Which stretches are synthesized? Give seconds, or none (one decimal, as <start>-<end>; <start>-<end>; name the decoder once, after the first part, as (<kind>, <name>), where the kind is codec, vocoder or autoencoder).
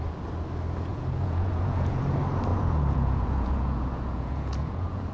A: 0.9-2.0 (vocoder, Vocos); 2.5-5.1